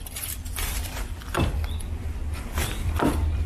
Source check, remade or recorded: remade